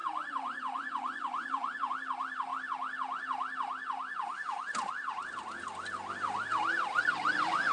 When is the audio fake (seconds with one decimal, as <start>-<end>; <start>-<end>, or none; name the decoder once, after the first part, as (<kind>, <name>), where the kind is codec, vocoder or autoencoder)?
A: 0.0-1.9 (vocoder, Vocos); 7.0-7.7